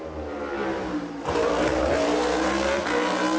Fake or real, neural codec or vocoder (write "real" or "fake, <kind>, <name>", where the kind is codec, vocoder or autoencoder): real